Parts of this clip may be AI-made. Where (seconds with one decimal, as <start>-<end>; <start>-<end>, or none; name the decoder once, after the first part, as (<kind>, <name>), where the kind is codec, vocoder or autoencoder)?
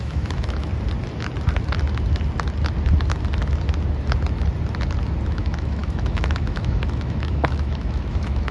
0.0-0.7 (autoencoder, DAC-VAE); 5.3-8.5